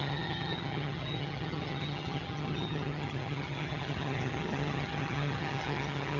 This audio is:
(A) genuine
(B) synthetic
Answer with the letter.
B